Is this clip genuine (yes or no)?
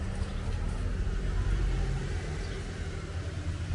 yes